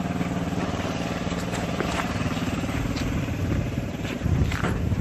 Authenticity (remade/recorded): remade